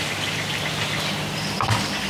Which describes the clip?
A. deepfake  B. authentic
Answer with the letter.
B